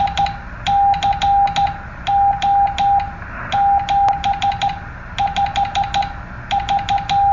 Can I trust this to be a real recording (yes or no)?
yes